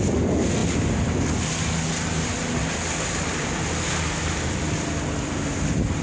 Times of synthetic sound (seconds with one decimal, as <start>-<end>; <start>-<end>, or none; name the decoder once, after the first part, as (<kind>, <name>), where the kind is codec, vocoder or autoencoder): none